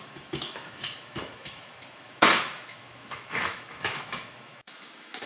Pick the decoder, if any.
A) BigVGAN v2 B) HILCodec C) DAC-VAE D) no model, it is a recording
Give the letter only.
C